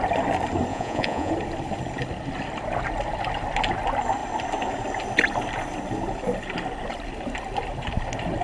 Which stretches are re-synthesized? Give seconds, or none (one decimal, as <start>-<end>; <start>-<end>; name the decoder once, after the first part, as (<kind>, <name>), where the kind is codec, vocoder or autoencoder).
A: 0.7-1.3 (vocoder, Vocos)